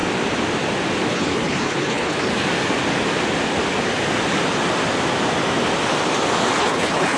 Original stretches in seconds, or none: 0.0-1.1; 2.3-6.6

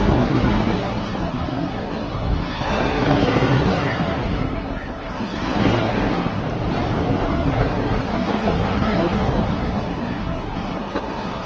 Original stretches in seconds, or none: 6.4-7.0

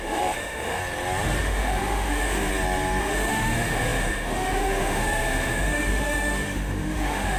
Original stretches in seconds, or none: 0.8-1.4; 2.5-3.0